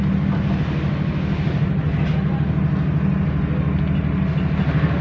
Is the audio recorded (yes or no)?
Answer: yes